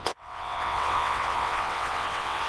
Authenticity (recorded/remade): remade